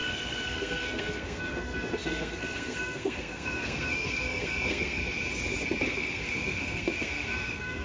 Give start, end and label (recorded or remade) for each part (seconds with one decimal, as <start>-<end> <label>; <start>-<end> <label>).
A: 0.0-5.0 remade; 5.0-5.8 recorded; 5.8-7.8 remade